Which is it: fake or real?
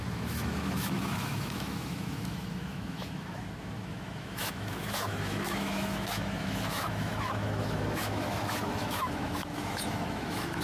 fake